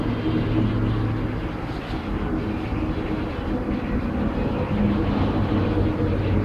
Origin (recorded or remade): recorded